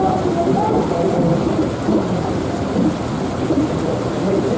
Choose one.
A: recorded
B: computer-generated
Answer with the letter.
A